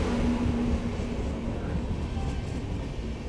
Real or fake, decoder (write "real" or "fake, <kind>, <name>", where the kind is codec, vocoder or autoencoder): real